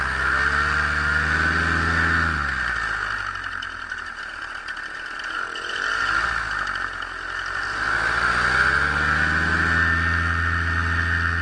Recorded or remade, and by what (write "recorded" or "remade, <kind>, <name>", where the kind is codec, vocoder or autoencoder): recorded